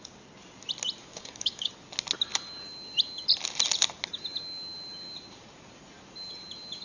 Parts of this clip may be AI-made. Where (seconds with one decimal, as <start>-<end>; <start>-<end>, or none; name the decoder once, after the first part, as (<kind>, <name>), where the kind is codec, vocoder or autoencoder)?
1.0-1.7 (codec, DAC)